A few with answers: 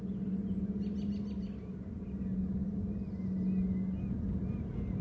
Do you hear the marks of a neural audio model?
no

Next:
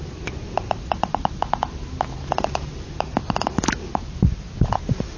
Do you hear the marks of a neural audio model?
no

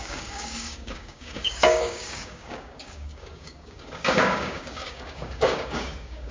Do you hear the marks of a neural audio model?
yes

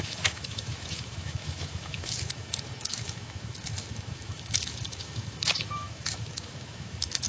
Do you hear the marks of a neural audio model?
yes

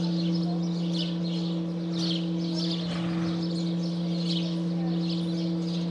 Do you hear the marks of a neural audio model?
no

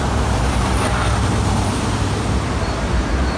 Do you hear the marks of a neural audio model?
yes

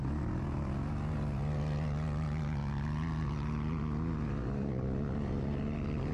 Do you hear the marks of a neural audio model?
no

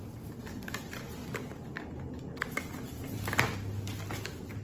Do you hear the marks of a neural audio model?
no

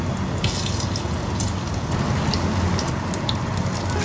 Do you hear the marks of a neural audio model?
no